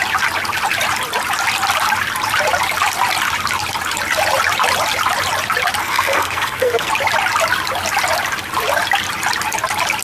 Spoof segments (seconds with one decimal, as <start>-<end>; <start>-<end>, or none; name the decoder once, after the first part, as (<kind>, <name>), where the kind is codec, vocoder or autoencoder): 5.8-6.9 (codec, SNAC)